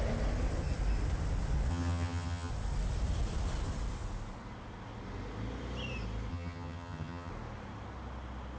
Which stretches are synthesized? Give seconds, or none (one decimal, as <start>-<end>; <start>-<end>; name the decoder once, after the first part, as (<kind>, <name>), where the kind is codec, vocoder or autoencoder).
1.7-2.5 (vocoder, HiFi-GAN); 6.3-7.3

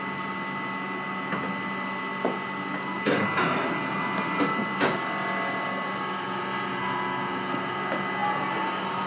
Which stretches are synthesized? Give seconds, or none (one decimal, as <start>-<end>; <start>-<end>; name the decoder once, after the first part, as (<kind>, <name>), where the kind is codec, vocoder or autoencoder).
none